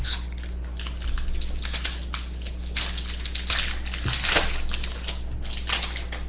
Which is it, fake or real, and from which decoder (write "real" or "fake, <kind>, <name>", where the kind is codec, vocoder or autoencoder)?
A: real